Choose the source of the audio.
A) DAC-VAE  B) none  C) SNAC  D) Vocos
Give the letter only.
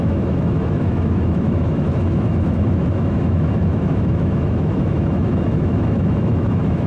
A